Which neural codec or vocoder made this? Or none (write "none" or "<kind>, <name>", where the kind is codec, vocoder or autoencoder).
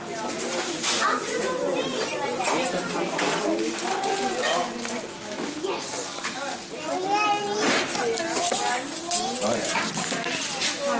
none